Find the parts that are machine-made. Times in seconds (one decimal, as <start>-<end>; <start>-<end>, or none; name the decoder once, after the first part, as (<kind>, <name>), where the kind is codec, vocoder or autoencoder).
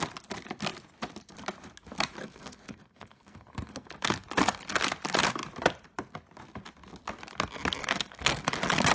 2.2-3.9 (codec, SNAC); 7.8-8.5